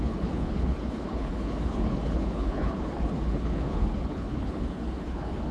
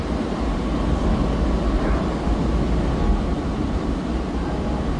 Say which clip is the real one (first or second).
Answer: second